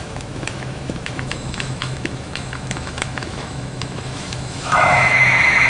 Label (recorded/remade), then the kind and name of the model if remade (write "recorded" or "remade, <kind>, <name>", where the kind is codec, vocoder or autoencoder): remade, autoencoder, DAC-VAE